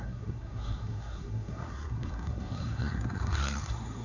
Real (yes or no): no